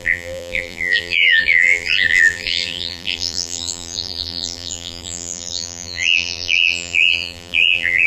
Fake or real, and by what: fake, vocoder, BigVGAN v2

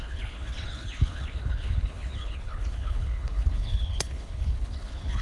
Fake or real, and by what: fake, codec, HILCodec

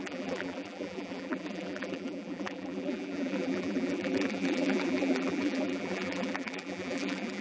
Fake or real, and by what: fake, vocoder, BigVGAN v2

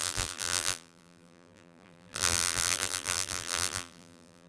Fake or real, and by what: fake, vocoder, BigVGAN v2